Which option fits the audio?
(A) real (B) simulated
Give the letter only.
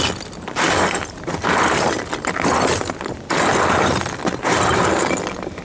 A